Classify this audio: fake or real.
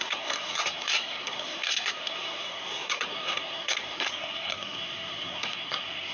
fake